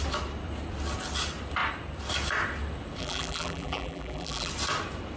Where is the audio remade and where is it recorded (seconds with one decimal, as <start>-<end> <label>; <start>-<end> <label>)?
0.0-3.0 recorded; 3.0-4.5 remade; 4.5-5.2 recorded

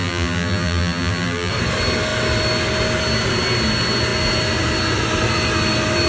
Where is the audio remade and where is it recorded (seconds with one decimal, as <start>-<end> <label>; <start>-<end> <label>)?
0.0-1.5 remade; 1.5-6.1 recorded